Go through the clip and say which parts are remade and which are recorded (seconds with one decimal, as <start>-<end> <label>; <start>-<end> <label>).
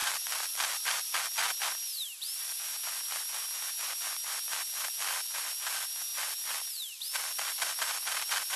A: 0.0-1.2 remade; 1.2-1.9 recorded; 1.9-2.6 remade; 2.6-8.6 recorded